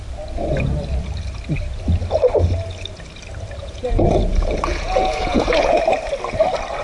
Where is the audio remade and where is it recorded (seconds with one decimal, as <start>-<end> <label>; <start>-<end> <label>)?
0.0-3.6 recorded; 3.6-5.8 remade; 5.8-6.8 recorded